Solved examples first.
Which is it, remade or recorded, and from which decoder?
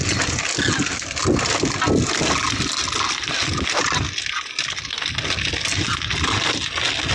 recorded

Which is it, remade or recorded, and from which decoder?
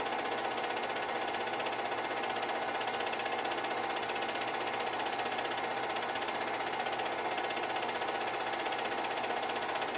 recorded